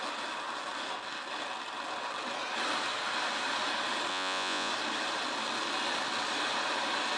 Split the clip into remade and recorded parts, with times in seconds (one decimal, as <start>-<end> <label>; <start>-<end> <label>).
0.0-4.1 recorded; 4.1-4.7 remade; 4.7-7.2 recorded